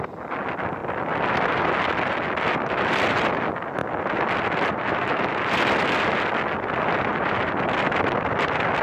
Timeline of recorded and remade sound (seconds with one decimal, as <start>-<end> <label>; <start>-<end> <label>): 0.0-7.1 recorded; 7.1-8.8 remade